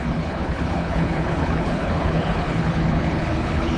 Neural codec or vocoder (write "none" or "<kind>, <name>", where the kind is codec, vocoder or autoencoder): codec, HILCodec